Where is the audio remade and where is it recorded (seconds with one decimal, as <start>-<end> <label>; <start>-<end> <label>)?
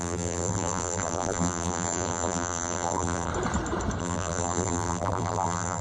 0.0-3.3 remade; 3.3-4.0 recorded; 4.0-5.8 remade